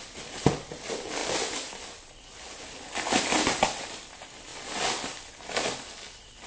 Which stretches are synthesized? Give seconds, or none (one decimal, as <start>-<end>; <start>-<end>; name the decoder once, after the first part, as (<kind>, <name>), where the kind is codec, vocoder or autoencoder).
none